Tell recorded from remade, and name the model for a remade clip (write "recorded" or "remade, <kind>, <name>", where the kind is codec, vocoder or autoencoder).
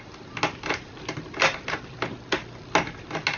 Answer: recorded